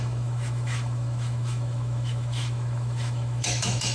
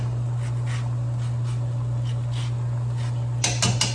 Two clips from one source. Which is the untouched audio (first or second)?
second